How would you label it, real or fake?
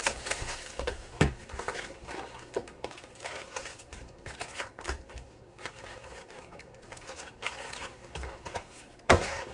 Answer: fake